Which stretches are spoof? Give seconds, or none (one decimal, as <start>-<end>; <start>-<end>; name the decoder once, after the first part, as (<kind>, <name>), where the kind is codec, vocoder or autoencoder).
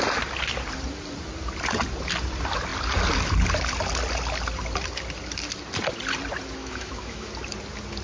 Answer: 6.6-7.3 (autoencoder, DAC-VAE)